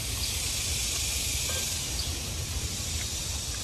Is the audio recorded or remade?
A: recorded